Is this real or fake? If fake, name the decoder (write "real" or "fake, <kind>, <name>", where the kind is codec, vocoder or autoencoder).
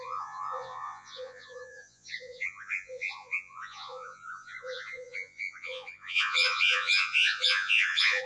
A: fake, vocoder, Vocos